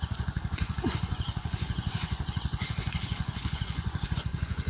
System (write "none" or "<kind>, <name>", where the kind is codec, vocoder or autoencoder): vocoder, Vocos